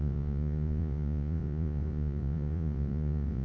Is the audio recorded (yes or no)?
no